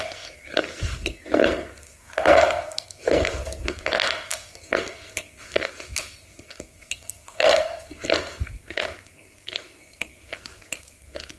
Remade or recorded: remade